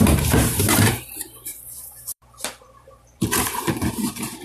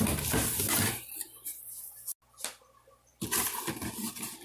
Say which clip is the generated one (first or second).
first